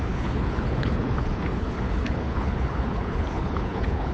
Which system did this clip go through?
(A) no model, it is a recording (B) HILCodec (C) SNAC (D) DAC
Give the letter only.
B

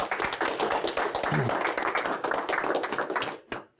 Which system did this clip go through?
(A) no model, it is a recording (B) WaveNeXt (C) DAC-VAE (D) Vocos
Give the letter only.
A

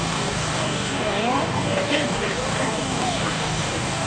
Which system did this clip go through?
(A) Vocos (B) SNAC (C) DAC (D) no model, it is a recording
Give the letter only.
C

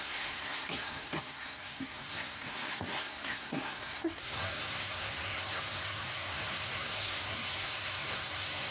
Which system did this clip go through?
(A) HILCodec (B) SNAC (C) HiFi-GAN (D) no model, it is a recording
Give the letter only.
B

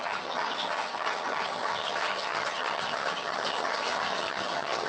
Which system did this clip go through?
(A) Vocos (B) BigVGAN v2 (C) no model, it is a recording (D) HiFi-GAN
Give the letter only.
D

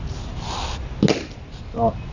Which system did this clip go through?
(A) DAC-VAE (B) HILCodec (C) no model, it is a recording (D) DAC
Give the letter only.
C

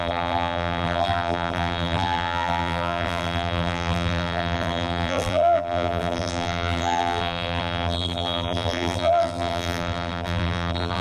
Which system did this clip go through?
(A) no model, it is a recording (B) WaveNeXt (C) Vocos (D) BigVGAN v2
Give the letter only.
D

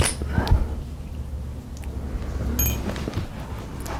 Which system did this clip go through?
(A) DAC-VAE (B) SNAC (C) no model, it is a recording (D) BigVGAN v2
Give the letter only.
C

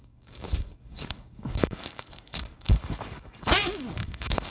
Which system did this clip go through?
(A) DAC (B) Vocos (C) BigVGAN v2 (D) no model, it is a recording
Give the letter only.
A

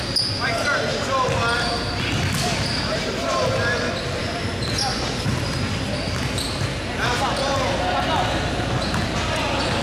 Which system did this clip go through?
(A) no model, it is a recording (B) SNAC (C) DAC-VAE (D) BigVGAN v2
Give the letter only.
A